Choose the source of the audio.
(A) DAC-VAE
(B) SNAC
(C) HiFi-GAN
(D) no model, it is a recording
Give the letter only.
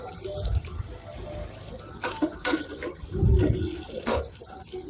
D